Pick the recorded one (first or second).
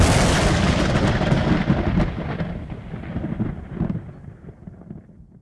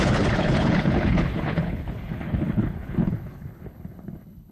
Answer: first